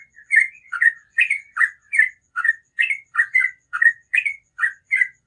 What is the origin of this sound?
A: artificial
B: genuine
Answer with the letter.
A